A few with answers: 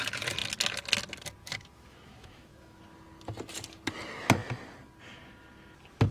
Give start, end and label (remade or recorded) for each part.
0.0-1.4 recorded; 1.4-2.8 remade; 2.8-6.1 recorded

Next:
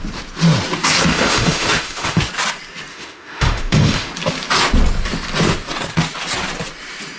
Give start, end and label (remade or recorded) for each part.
0.0-1.1 recorded; 1.1-2.2 remade; 2.2-2.9 recorded; 2.9-4.1 remade; 4.1-7.2 recorded

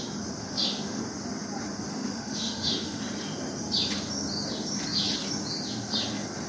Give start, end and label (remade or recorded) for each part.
0.0-0.4 recorded; 0.4-1.0 remade; 1.0-1.9 recorded; 1.9-3.0 remade; 3.0-6.5 recorded

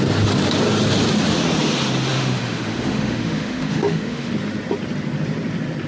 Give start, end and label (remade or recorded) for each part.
0.0-2.1 recorded; 2.1-4.3 remade; 4.3-5.9 recorded